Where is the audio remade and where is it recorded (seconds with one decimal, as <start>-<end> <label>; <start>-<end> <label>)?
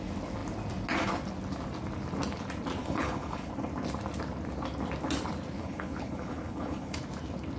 0.0-2.8 recorded; 2.8-3.5 remade; 3.5-5.6 recorded; 5.6-7.0 remade; 7.0-7.6 recorded